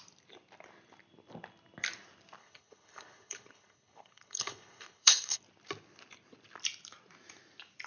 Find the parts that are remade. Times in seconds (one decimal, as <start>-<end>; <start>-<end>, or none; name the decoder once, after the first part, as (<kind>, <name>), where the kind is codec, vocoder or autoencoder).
2.4-5.4 (codec, HILCodec)